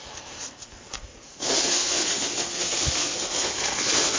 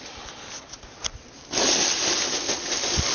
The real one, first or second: second